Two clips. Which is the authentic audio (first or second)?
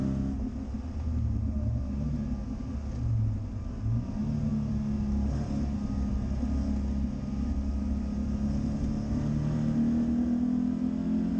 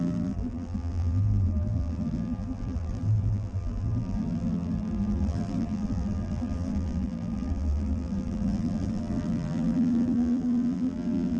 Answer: first